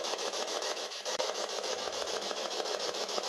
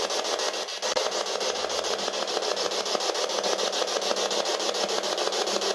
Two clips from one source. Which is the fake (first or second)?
first